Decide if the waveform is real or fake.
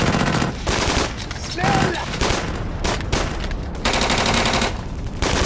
real